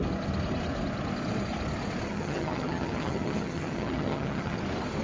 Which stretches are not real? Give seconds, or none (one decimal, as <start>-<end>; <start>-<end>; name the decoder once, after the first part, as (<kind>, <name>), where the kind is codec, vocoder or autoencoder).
2.1-4.6 (vocoder, HiFi-GAN)